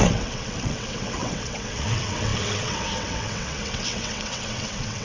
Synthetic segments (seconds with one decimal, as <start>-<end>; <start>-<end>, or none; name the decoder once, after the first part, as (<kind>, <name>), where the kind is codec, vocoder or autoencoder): 0.0-5.0 (vocoder, WaveNeXt)